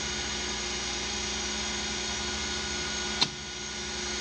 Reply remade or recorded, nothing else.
recorded